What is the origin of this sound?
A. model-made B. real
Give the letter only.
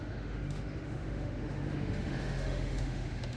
A